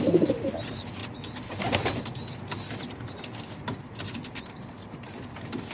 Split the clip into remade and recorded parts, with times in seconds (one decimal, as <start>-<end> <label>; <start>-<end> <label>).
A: 0.0-1.0 remade; 1.0-4.4 recorded; 4.4-5.7 remade